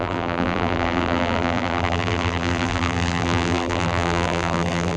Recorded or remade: remade